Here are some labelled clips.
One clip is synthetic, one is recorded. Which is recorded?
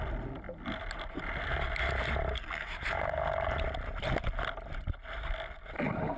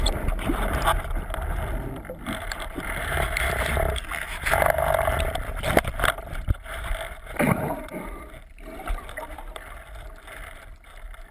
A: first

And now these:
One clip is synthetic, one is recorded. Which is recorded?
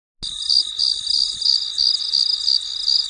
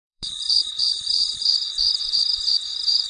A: first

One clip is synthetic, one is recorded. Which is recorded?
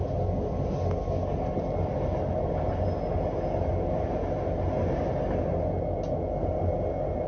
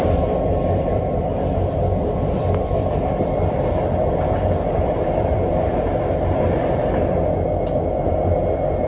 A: first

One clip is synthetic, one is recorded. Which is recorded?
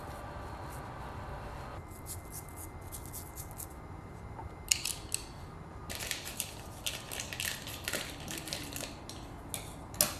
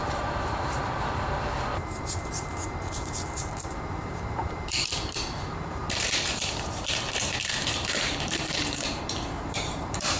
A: first